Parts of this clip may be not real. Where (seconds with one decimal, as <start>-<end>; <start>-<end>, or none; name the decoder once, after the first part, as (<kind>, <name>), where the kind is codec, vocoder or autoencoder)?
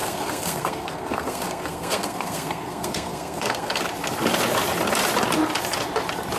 0.0-3.8 (codec, SNAC)